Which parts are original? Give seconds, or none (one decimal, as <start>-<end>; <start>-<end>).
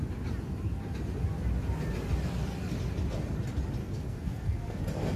0.0-3.8; 4.8-5.2